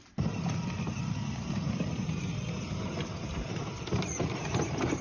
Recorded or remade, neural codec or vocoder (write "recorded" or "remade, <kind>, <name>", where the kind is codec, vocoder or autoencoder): recorded